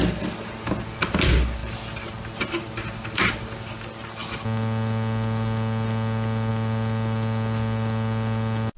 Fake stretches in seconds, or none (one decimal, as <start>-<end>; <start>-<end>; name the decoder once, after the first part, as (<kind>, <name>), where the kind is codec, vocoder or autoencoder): none